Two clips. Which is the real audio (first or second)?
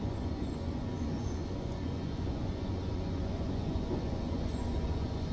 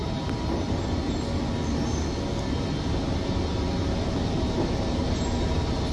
second